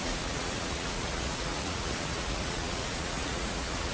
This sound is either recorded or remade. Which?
remade